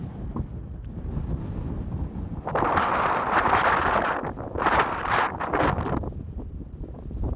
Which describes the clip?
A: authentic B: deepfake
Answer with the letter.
A